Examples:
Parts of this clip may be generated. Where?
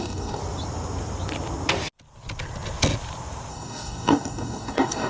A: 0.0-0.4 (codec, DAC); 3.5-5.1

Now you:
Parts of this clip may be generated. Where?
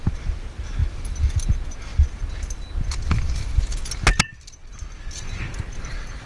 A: none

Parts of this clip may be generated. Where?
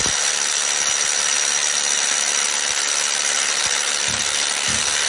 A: none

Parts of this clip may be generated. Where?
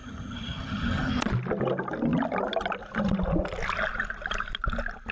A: 0.0-1.1 (vocoder, HiFi-GAN)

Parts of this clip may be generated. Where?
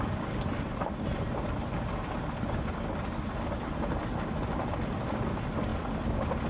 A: none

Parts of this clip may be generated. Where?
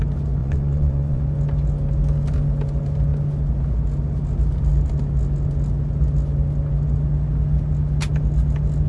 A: 0.4-1.2 (vocoder, Vocos)